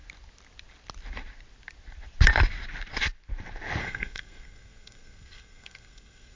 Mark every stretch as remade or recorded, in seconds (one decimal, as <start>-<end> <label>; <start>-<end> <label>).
0.0-3.8 recorded; 3.8-6.4 remade